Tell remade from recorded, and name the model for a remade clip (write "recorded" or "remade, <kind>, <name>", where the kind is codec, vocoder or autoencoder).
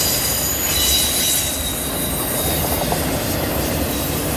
recorded